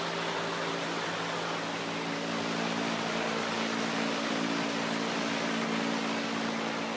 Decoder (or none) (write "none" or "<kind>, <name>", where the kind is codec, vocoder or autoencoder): none